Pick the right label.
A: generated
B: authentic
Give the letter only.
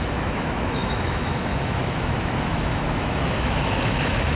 A